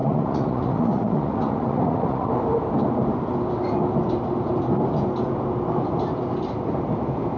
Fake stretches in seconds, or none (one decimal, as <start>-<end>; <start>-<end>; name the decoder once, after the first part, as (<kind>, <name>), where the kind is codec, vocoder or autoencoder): 0.0-2.3 (vocoder, Vocos)